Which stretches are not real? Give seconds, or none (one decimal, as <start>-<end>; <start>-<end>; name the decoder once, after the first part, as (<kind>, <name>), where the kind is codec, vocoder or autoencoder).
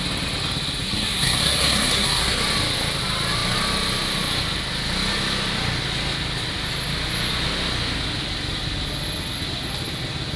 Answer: 0.8-2.4 (codec, SNAC)